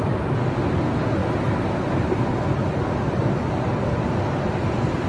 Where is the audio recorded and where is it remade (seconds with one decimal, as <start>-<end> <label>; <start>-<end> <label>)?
0.0-5.1 recorded